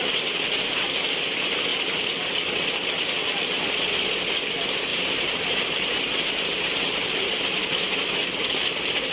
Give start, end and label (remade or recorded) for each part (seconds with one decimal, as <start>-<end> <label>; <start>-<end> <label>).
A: 0.0-1.7 recorded; 1.7-2.3 remade; 2.3-4.9 recorded; 4.9-7.6 remade; 7.6-9.1 recorded